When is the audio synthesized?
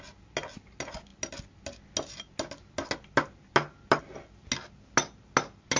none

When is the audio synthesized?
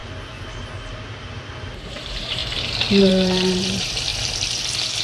1.9-2.4 (vocoder, BigVGAN v2); 3.0-4.1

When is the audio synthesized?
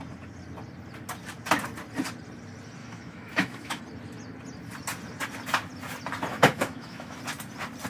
2.8-3.8 (autoencoder, DAC-VAE); 6.3-7.2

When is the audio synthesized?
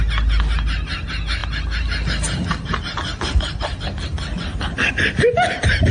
none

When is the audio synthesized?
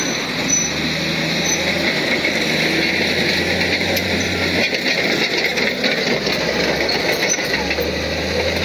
4.0-4.9 (vocoder, BigVGAN v2)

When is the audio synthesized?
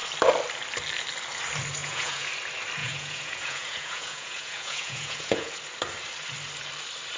1.8-2.3 (vocoder, Vocos); 2.8-5.5